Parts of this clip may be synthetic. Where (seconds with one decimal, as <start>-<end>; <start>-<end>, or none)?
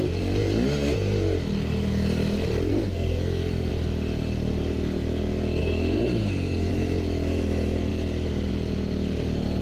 2.7-3.7; 5.6-6.7